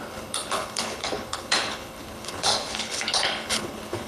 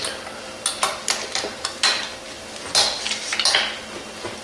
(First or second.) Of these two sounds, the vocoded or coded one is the first